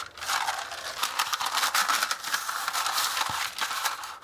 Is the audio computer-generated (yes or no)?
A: no